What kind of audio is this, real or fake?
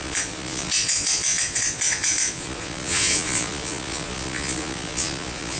fake